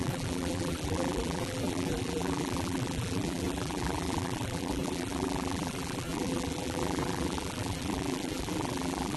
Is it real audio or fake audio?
fake